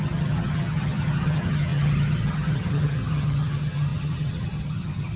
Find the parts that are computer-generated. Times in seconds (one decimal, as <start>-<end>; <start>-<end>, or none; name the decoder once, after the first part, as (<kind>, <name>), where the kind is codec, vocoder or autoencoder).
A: 0.0-5.2 (vocoder, HiFi-GAN)